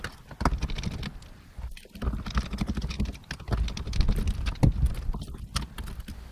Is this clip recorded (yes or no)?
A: yes